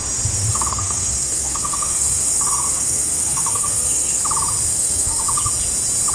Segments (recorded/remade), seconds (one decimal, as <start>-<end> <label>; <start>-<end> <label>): 0.0-0.5 recorded; 0.5-4.2 remade; 4.2-4.7 recorded; 4.7-5.2 remade; 5.2-6.1 recorded